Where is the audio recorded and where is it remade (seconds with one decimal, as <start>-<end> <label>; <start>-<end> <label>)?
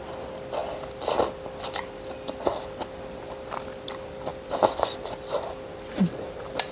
0.0-6.7 recorded